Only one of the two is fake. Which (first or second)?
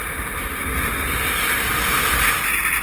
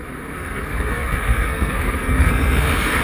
second